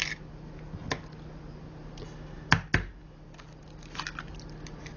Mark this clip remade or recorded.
recorded